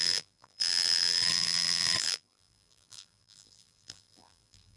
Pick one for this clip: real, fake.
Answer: fake